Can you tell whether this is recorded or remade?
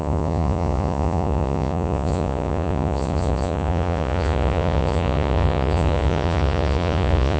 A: remade